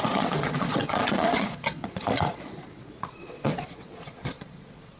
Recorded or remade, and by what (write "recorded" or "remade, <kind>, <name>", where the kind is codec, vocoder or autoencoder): remade, vocoder, Vocos